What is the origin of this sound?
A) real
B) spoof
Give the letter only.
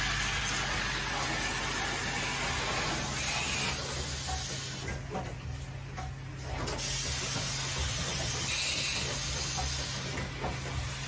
A